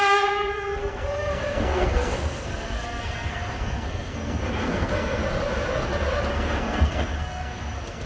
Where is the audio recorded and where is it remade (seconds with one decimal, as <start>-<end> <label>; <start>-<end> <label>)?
0.0-5.2 remade; 5.2-6.3 recorded; 6.3-8.1 remade